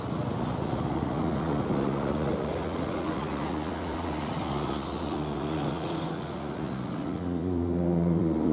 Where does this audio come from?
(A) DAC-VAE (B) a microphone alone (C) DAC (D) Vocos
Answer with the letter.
D